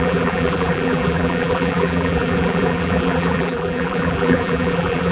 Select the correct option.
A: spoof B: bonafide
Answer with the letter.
A